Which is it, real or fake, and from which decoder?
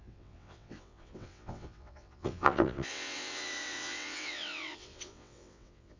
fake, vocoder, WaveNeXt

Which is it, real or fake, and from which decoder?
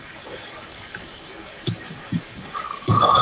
fake, codec, DAC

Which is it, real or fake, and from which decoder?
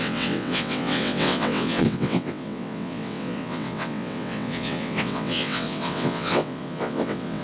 fake, vocoder, WaveNeXt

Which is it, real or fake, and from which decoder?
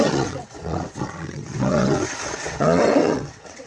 fake, vocoder, WaveNeXt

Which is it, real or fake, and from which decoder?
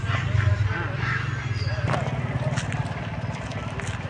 real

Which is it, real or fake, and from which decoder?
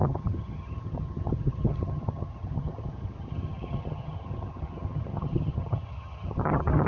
fake, vocoder, HiFi-GAN